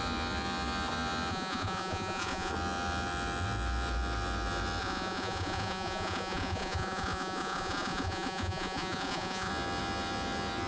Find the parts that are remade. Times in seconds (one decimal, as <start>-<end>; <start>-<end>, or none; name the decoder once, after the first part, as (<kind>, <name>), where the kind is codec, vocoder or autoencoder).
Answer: 1.3-2.5 (vocoder, Vocos); 4.8-9.5